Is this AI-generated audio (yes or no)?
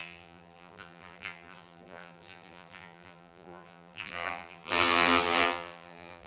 yes